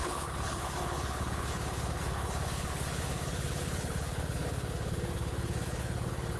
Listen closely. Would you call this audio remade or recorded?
remade